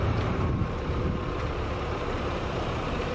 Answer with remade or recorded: remade